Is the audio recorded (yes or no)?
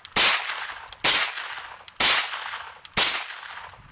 yes